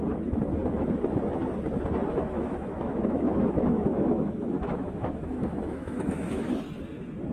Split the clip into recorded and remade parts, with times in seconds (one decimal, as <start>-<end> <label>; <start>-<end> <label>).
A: 0.0-2.1 recorded; 2.1-6.5 remade; 6.5-7.3 recorded